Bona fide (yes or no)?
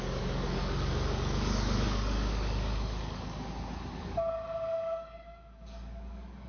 no